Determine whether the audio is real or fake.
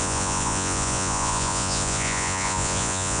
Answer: fake